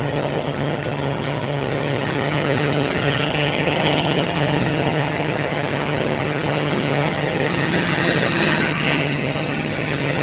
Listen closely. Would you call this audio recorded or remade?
remade